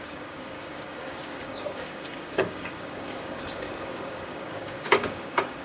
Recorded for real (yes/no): no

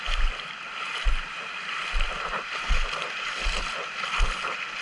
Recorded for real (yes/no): yes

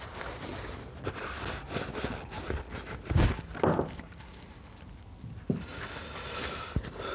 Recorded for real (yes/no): yes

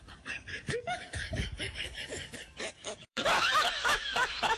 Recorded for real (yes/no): no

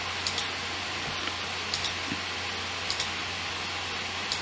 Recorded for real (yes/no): yes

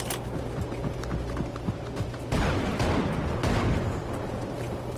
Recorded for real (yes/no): yes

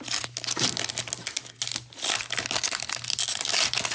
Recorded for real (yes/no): yes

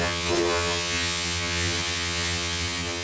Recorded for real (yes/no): no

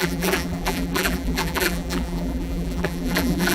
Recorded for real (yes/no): no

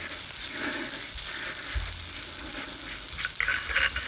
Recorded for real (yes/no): yes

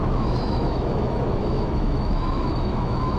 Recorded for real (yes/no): no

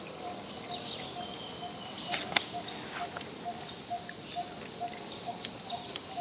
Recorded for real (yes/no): yes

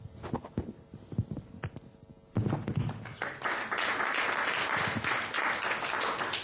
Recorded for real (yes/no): yes